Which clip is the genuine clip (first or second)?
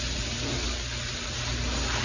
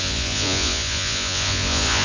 first